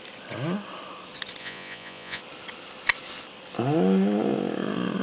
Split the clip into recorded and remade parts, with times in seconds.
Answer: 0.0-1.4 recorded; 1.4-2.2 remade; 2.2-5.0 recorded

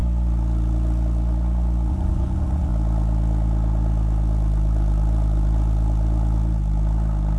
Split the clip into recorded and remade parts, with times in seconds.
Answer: 0.0-1.9 recorded; 1.9-2.7 remade; 2.7-7.4 recorded

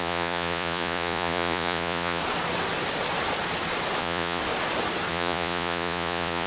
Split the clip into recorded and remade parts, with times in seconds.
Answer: 0.0-2.2 remade; 2.2-4.0 recorded; 4.0-4.4 remade; 4.4-5.1 recorded; 5.1-6.5 remade